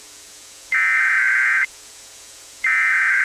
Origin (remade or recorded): remade